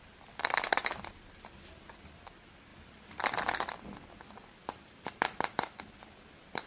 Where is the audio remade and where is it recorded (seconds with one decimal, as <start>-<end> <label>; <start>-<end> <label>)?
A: 0.0-4.6 recorded; 4.6-5.8 remade; 5.8-6.7 recorded